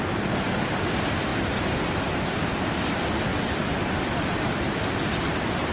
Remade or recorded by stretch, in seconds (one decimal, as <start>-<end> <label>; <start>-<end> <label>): 0.0-5.7 recorded